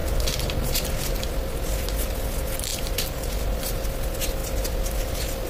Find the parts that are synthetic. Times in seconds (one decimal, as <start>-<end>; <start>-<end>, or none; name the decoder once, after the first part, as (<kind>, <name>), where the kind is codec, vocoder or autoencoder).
none